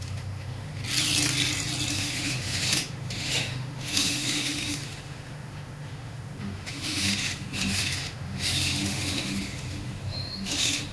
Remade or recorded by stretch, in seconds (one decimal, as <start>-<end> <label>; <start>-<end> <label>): 0.0-0.8 remade; 0.8-1.9 recorded; 1.9-10.9 remade